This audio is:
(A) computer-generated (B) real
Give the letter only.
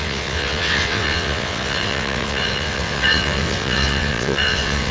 A